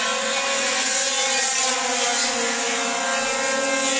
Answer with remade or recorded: recorded